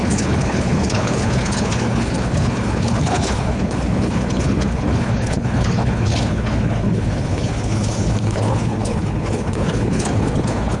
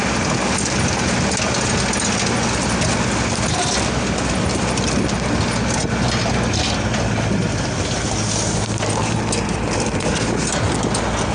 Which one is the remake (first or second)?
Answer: first